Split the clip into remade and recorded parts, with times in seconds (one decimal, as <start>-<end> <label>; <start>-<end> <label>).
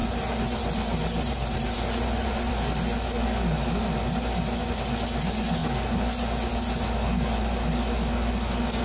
0.0-2.5 remade; 2.5-8.8 recorded